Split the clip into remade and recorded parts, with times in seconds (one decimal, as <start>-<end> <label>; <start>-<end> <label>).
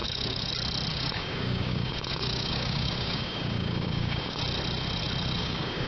0.0-0.5 remade; 0.5-0.9 recorded; 0.9-4.4 remade; 4.4-5.4 recorded; 5.4-5.9 remade